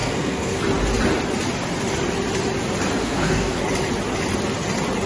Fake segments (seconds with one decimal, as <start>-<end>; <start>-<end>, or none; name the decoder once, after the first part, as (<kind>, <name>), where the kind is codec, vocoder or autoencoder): 0.0-0.6 (codec, SNAC); 3.0-3.6